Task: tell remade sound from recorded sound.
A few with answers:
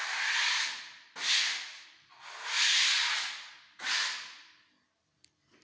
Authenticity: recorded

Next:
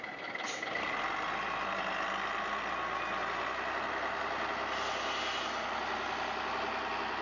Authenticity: recorded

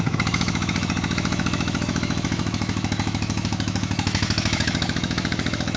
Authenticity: remade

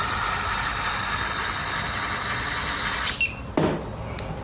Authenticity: recorded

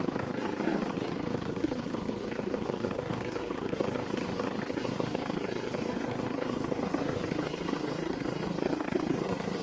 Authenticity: remade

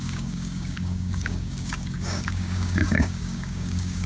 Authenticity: remade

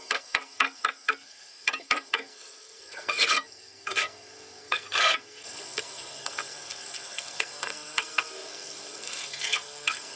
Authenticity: remade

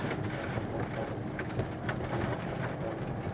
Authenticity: recorded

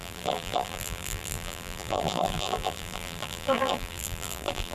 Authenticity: remade